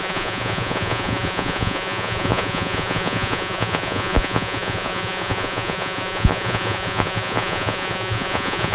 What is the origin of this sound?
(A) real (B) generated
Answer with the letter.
B